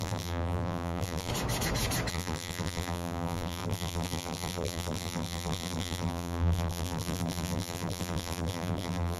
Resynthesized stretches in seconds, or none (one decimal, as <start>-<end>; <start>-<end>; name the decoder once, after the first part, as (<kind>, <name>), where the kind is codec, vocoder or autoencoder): 0.0-1.3 (vocoder, BigVGAN v2); 2.1-9.2